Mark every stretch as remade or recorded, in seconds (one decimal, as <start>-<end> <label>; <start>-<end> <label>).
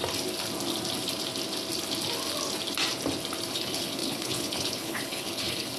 0.0-3.5 recorded; 3.5-5.8 remade